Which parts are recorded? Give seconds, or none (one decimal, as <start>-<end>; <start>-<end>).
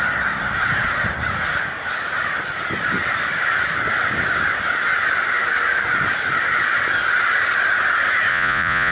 0.0-8.3